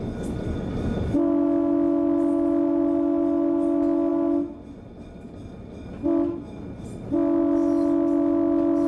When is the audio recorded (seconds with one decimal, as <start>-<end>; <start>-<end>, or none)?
0.0-8.9